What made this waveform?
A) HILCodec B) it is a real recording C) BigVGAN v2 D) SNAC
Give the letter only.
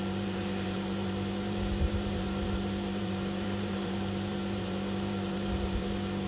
C